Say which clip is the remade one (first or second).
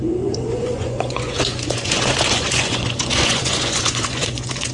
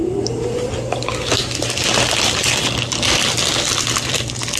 first